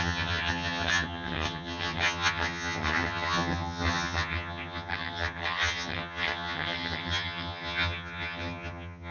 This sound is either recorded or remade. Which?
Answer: remade